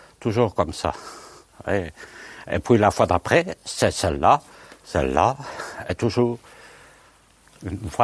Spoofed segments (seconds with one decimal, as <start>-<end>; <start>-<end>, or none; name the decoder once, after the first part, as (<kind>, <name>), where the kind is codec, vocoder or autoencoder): none